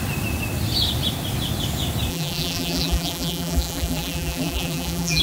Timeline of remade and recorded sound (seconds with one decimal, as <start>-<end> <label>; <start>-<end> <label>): 0.0-2.1 recorded; 2.1-5.2 remade